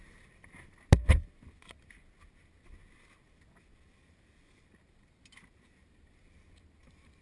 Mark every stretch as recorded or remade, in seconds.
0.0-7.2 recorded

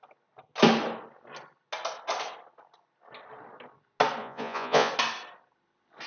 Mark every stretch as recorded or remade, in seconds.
0.0-4.2 recorded; 4.2-4.9 remade; 4.9-6.1 recorded

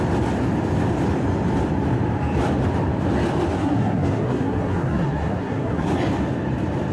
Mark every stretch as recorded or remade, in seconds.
0.0-3.6 recorded; 3.6-5.9 remade; 5.9-6.9 recorded